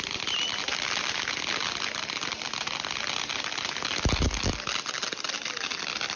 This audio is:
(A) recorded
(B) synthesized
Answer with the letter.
A